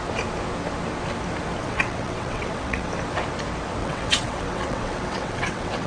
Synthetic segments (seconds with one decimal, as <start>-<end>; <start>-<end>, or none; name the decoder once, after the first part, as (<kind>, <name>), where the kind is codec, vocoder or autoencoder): 1.6-2.9 (vocoder, WaveNeXt); 3.8-5.9

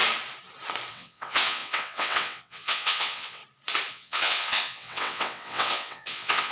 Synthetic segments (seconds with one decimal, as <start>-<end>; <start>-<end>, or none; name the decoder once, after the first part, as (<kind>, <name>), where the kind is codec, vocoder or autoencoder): 0.9-3.4 (vocoder, WaveNeXt); 3.9-6.5

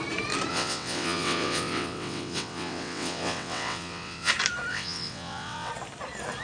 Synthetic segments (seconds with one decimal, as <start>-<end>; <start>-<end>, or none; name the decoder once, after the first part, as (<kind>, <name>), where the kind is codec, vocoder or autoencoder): 0.5-4.3 (vocoder, WaveNeXt); 4.7-5.7

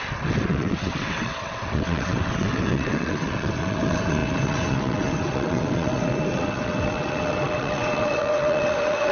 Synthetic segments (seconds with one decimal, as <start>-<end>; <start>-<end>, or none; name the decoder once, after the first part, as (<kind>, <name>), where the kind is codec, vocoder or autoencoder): 0.0-9.1 (vocoder, WaveNeXt)

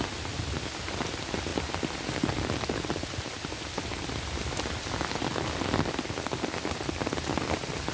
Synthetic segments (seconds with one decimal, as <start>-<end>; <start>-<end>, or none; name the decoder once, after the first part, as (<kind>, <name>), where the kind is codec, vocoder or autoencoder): none

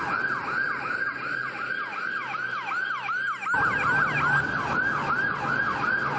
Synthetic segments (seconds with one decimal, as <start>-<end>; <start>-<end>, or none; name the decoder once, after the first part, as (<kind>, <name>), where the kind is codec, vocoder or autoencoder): none